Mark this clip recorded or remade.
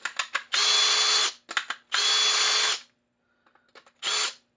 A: recorded